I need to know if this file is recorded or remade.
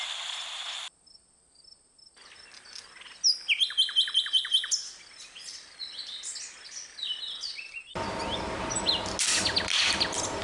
recorded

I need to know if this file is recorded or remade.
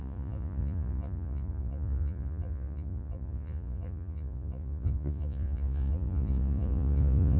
remade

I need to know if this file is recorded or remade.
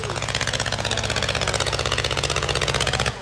remade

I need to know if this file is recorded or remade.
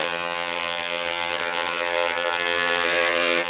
remade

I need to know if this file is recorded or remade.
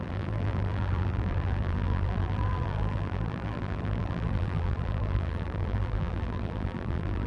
remade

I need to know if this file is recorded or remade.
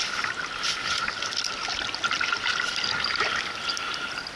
recorded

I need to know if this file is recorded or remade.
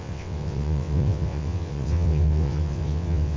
remade